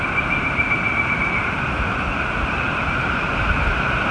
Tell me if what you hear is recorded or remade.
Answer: recorded